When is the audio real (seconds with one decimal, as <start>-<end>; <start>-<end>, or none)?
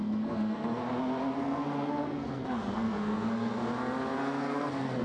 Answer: 0.8-1.4; 3.6-4.2